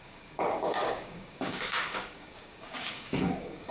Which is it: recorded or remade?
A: remade